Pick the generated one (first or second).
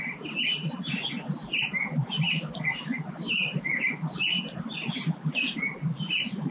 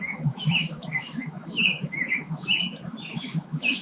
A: second